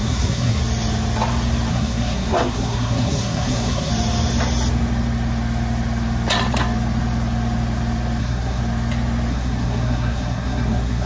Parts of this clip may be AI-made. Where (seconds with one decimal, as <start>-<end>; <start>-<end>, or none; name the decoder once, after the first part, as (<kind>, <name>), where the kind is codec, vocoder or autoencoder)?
0.0-0.6 (codec, SNAC); 1.7-3.9; 8.2-8.6; 9.3-11.1